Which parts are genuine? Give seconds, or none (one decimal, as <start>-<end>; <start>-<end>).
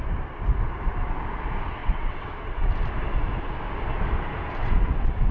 0.0-1.8; 2.7-4.6